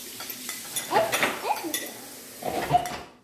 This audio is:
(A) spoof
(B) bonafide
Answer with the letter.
B